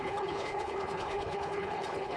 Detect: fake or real fake